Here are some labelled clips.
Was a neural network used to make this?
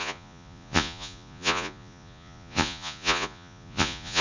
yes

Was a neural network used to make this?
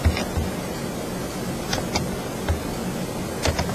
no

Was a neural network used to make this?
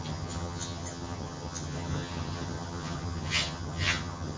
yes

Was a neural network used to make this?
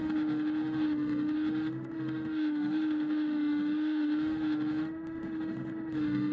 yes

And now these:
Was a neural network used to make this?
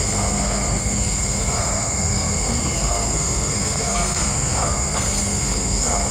yes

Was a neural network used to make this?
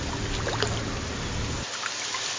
no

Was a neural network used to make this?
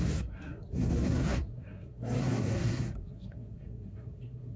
yes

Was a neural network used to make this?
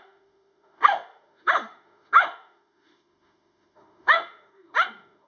yes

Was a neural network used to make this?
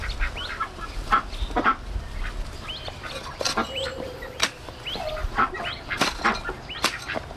no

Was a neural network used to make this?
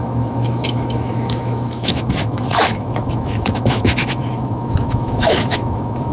yes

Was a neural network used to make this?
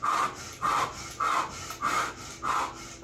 yes